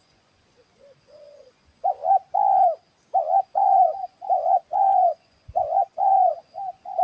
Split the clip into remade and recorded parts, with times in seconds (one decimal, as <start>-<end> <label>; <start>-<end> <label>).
0.0-2.0 remade; 2.0-3.4 recorded; 3.4-7.0 remade